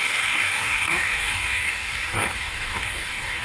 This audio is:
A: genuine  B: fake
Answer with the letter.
B